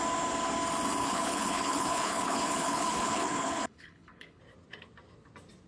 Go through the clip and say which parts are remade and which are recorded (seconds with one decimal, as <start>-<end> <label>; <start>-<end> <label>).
0.0-1.0 recorded; 1.0-4.4 remade; 4.4-5.7 recorded